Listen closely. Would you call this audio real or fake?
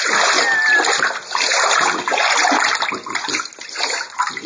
real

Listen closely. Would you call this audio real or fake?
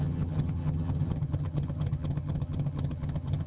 fake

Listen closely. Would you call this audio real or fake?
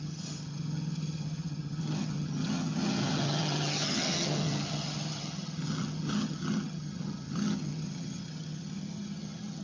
fake